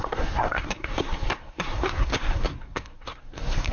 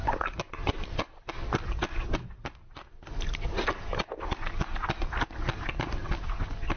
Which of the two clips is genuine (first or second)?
second